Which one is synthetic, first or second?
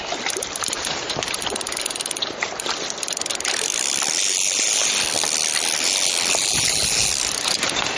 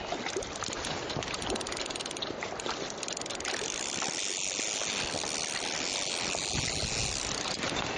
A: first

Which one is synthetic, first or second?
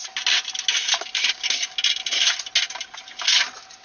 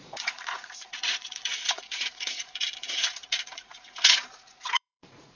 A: second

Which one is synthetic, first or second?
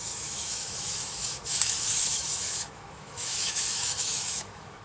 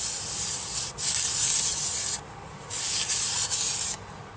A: first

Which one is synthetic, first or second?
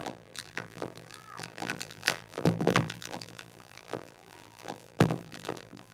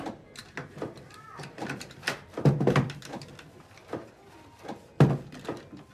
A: first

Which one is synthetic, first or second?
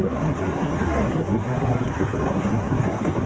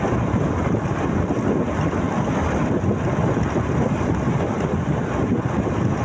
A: first